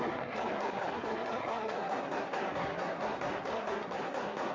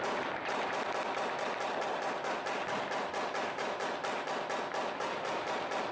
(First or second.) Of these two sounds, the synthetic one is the first